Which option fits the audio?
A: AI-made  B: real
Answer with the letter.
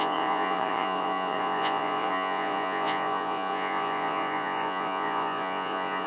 A